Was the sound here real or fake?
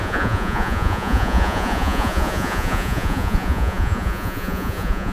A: fake